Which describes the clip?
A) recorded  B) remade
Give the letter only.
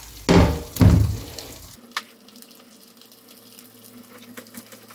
A